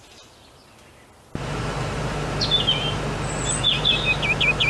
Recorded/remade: recorded